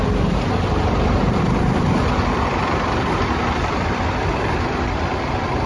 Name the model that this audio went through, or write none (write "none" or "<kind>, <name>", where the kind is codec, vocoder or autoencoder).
vocoder, BigVGAN v2